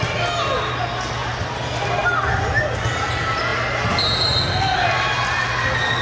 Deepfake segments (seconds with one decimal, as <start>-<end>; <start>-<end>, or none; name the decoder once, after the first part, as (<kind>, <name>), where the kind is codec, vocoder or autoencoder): none